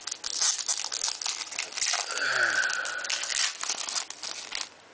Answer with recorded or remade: recorded